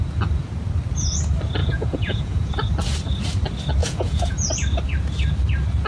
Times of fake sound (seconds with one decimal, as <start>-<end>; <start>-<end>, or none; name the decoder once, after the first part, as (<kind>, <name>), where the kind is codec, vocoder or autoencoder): 1.6-2.5 (vocoder, Vocos); 3.8-4.5